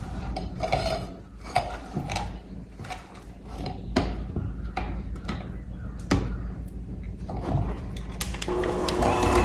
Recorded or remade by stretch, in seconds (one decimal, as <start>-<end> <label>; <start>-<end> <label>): 0.0-8.3 recorded; 8.3-9.0 remade; 9.0-9.4 recorded